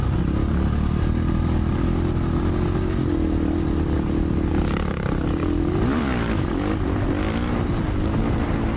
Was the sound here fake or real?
real